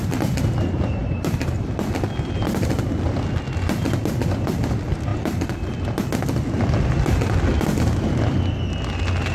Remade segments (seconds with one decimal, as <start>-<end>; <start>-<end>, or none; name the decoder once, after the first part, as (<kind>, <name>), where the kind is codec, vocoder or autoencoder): none